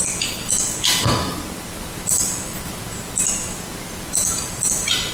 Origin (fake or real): real